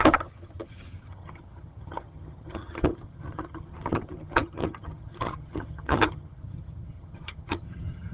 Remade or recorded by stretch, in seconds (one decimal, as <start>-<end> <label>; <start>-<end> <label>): 0.0-8.1 remade